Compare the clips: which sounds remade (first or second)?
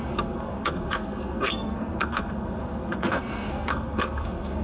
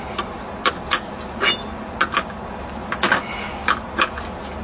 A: first